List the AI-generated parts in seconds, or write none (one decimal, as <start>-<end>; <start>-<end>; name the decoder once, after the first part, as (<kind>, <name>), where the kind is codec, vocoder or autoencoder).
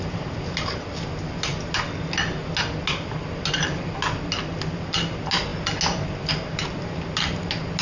none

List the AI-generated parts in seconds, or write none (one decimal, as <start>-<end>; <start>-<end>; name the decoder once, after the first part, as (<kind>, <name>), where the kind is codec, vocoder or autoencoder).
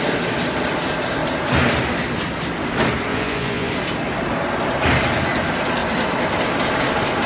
3.1-3.7 (vocoder, Vocos)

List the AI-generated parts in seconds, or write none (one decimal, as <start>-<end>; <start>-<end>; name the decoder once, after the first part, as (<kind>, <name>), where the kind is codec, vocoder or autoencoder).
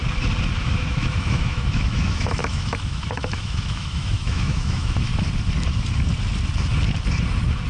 0.6-5.1 (autoencoder, DAC-VAE)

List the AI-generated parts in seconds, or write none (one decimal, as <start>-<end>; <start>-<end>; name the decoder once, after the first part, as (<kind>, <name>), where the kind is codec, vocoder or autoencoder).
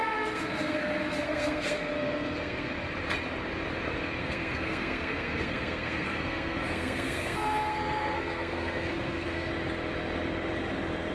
0.0-2.7 (codec, SNAC); 4.2-9.5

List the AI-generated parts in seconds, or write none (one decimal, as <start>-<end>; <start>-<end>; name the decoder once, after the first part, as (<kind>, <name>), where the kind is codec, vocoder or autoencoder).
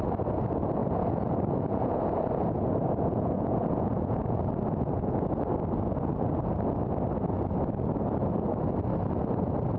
0.8-5.4 (vocoder, Vocos)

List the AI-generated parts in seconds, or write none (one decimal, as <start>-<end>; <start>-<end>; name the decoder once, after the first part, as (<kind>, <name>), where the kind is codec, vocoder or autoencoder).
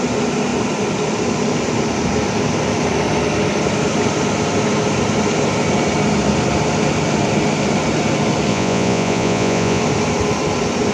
8.5-9.8 (vocoder, Vocos)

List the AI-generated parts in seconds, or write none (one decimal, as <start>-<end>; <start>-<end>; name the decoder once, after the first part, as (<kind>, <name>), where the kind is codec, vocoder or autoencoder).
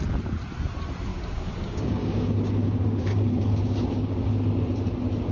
1.1-4.3 (codec, DAC)